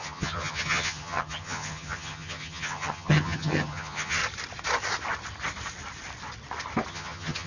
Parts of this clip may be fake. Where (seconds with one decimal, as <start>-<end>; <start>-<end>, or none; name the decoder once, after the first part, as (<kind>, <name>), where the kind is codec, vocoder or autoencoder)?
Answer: 0.0-4.2 (vocoder, HiFi-GAN); 6.9-7.5